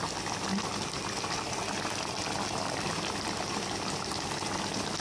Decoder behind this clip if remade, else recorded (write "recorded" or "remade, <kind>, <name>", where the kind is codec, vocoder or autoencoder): recorded